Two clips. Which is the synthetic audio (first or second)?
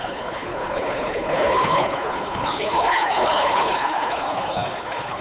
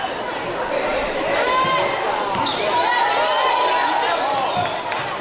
first